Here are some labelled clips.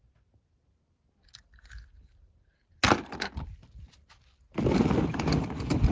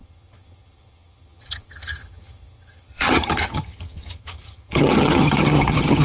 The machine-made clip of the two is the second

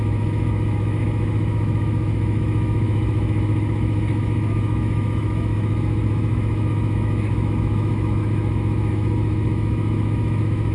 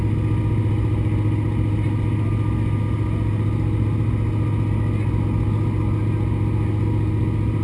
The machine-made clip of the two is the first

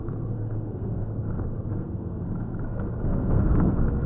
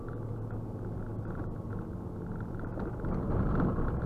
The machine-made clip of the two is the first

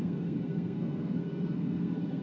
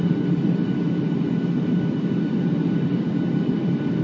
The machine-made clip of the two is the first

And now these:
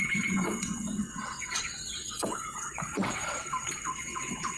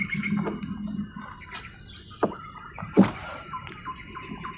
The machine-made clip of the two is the first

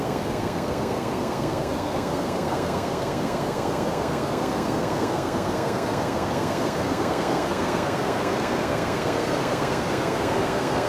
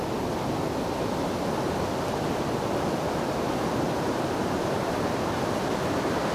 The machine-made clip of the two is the first